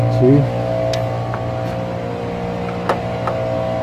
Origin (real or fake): real